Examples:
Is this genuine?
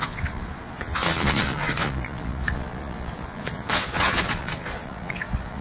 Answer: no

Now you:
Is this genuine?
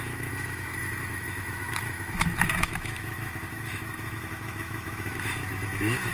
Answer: no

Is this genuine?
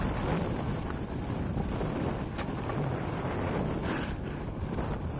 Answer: yes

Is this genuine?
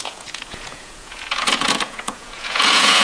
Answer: no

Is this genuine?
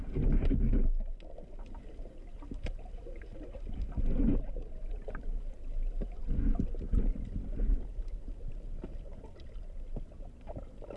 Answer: yes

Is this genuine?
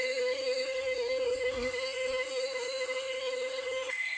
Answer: no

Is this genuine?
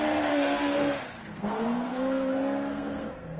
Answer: no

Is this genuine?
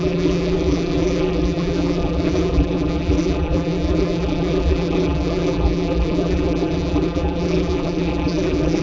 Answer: no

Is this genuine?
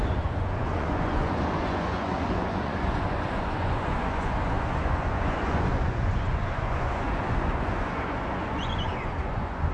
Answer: no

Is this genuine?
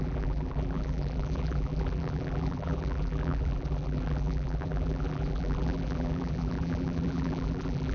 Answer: no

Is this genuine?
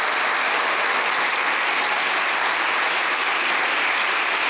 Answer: yes